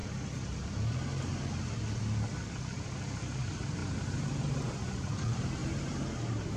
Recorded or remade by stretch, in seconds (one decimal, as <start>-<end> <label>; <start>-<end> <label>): 0.0-1.6 recorded; 1.6-6.6 remade